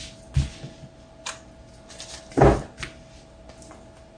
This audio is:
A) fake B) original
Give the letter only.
B